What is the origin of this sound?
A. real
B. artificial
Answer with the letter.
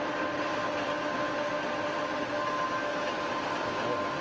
A